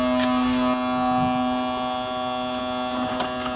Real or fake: real